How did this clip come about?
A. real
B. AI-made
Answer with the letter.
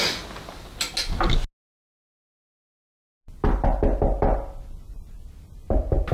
A